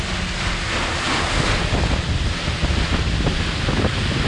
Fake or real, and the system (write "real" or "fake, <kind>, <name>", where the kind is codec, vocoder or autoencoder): real